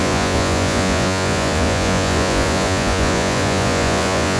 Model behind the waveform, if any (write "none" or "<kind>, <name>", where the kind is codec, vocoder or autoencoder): vocoder, Vocos